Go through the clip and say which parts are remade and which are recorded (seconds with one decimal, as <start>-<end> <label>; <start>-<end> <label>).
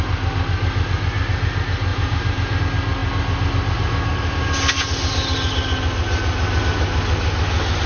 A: 0.0-1.9 recorded; 1.9-2.6 remade; 2.6-7.9 recorded